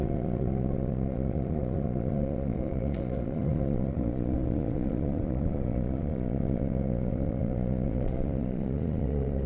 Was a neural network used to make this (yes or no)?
yes